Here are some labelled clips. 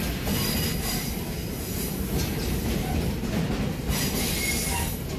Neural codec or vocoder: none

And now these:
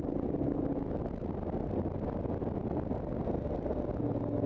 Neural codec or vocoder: none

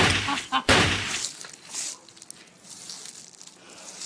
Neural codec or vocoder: none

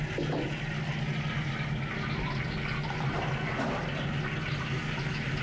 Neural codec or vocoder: none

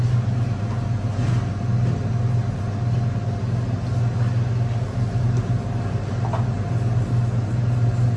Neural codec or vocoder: none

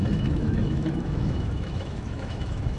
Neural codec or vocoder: autoencoder, DAC-VAE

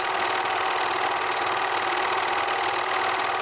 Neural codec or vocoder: none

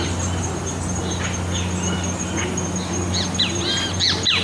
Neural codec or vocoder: none